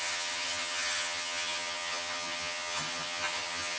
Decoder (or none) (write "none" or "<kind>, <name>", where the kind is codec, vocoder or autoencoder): vocoder, HiFi-GAN